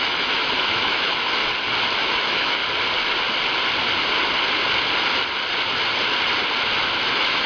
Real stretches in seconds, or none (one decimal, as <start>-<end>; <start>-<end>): 1.4-2.0; 2.6-7.1